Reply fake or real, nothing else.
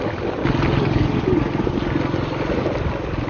real